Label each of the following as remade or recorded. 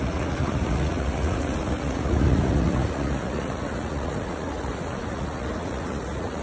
remade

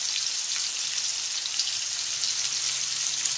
recorded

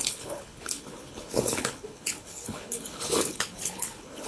remade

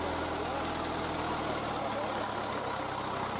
recorded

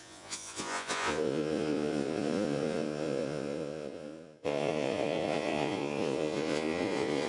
remade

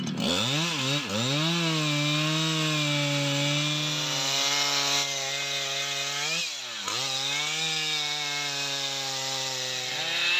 recorded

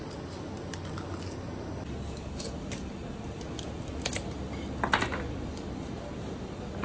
recorded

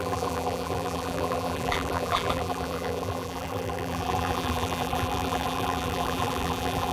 remade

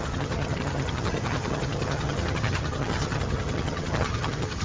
remade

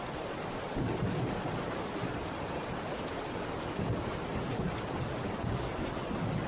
recorded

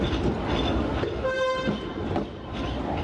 recorded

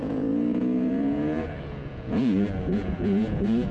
remade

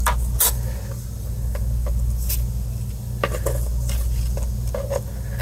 recorded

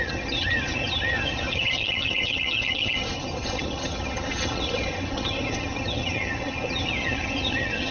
remade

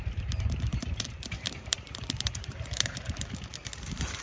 remade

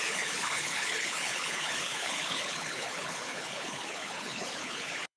remade